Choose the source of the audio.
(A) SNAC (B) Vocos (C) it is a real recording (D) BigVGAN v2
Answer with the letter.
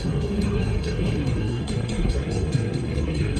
A